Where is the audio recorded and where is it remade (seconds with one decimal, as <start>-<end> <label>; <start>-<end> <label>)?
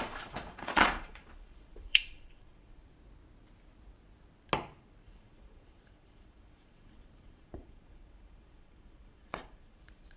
0.0-2.8 remade; 2.8-5.1 recorded; 5.1-10.2 remade